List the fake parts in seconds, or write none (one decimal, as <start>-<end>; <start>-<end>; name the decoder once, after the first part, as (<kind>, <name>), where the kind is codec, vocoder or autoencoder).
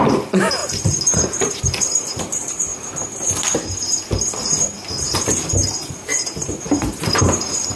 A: 0.0-2.7 (vocoder, BigVGAN v2); 5.0-7.8